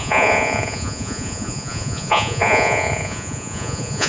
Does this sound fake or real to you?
fake